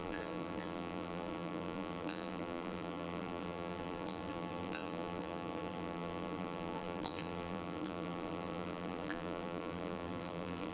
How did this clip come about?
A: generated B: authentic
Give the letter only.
A